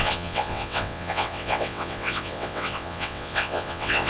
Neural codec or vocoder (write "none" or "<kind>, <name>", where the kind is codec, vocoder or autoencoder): vocoder, WaveNeXt